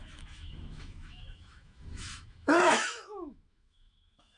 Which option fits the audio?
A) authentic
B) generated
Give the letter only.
B